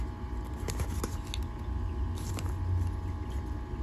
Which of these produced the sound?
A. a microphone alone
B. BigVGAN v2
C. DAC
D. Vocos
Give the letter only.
A